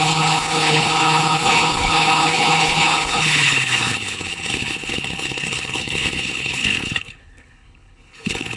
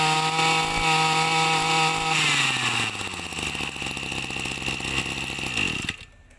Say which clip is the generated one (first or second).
first